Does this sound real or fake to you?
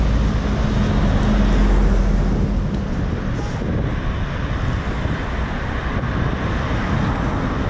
real